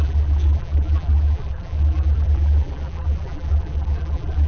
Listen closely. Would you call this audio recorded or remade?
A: remade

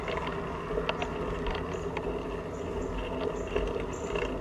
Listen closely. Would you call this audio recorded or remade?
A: recorded